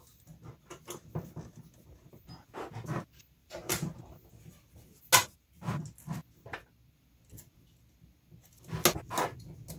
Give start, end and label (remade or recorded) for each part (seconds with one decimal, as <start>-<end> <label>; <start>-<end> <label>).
0.0-3.4 recorded; 3.4-4.3 remade; 4.3-5.2 recorded; 5.2-5.7 remade; 5.7-9.8 recorded